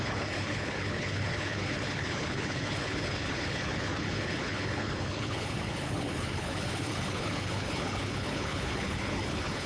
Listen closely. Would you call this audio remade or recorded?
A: remade